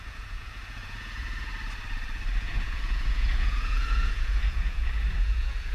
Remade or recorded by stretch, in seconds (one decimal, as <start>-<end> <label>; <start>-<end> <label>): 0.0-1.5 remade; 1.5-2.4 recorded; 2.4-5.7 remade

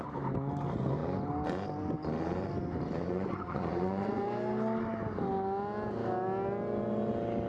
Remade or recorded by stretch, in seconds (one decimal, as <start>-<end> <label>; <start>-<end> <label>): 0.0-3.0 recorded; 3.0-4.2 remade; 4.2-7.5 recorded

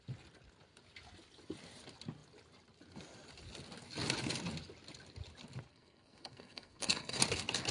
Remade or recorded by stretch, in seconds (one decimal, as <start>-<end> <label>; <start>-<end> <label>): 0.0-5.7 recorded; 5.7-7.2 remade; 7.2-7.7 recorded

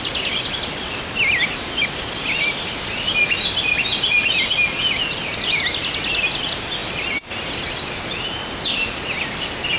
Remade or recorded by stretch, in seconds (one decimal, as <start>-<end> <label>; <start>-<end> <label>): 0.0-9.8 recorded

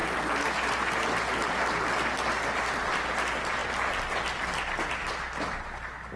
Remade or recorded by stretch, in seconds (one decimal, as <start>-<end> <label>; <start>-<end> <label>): 0.0-6.2 recorded

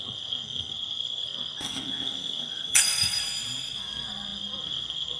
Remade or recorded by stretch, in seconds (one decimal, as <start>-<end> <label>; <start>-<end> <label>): 0.0-3.2 remade; 3.2-3.8 recorded; 3.8-5.2 remade

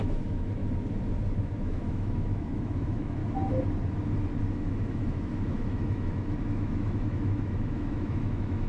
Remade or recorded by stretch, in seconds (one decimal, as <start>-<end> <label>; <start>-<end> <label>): 0.0-0.6 remade; 0.6-1.4 recorded; 1.4-3.2 remade; 3.2-4.4 recorded; 4.4-8.7 remade

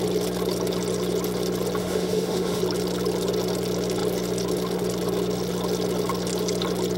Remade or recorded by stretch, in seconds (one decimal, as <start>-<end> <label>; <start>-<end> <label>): 0.0-1.8 recorded; 1.8-2.6 remade; 2.6-7.0 recorded